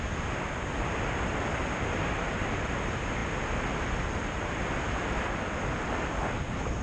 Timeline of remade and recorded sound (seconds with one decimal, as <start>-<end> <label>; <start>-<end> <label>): 0.0-6.8 recorded